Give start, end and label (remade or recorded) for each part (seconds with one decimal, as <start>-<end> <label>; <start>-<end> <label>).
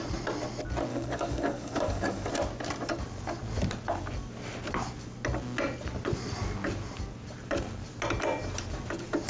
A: 0.0-0.9 recorded; 0.9-2.3 remade; 2.3-9.3 recorded